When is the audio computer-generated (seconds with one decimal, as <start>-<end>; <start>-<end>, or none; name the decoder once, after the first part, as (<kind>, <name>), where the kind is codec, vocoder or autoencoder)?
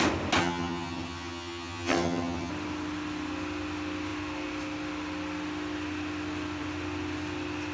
0.4-2.5 (vocoder, HiFi-GAN)